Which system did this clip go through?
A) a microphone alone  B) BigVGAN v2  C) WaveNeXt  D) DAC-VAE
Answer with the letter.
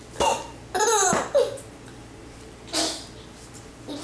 A